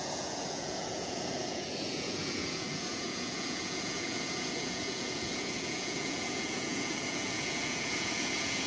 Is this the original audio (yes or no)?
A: no